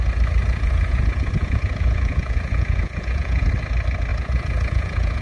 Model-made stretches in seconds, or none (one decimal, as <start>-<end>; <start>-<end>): 0.4-3.5; 4.1-5.2